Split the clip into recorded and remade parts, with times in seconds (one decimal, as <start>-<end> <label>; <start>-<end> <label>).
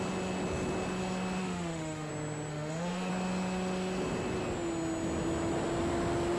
0.0-1.4 recorded; 1.4-2.1 remade; 2.1-2.5 recorded; 2.5-3.1 remade; 3.1-6.4 recorded